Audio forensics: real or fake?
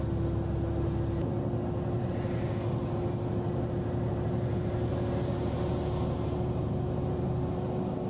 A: real